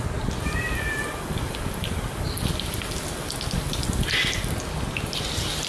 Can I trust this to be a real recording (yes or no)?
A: yes